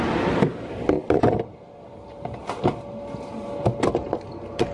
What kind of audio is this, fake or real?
real